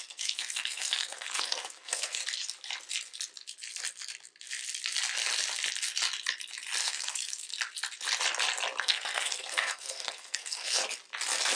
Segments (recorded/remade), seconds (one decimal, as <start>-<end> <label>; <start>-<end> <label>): 0.0-2.2 remade; 2.2-6.8 recorded; 6.8-7.5 remade; 7.5-8.8 recorded; 8.8-10.8 remade; 10.8-11.6 recorded